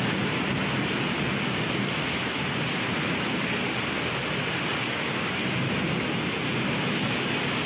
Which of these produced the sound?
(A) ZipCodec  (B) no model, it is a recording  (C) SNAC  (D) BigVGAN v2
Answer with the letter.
B